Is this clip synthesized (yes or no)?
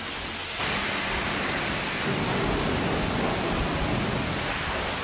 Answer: no